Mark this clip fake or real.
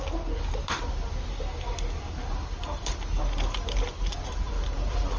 real